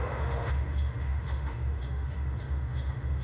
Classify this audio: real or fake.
fake